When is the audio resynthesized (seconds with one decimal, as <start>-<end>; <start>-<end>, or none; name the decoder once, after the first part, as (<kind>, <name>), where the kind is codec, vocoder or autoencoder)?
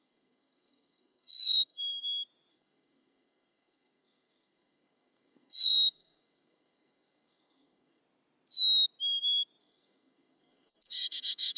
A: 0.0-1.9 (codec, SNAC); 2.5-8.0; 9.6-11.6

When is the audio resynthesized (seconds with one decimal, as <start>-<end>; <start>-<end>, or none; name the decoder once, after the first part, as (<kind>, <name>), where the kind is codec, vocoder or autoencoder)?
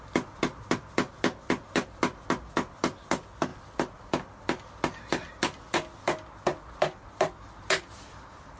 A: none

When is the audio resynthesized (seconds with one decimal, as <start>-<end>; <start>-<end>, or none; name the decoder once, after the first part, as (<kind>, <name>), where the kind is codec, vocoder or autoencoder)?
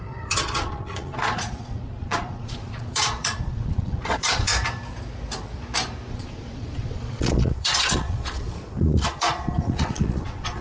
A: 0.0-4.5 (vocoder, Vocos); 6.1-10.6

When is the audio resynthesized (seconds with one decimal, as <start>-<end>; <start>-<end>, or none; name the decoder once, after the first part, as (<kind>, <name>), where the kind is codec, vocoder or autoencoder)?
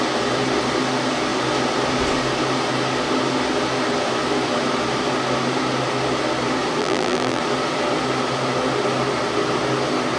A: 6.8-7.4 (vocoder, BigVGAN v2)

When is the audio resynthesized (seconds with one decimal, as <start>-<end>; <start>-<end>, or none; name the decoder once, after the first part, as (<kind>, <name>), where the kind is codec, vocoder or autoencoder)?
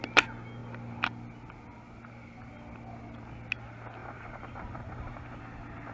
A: 4.0-5.4 (vocoder, BigVGAN v2)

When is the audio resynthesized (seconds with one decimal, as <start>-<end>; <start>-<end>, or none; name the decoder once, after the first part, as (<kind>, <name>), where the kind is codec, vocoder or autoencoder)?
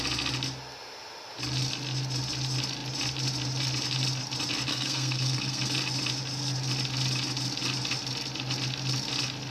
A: 4.7-5.7 (codec, SNAC)